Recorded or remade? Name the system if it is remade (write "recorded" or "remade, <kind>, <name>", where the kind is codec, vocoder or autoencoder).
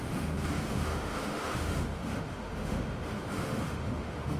remade, autoencoder, DAC-VAE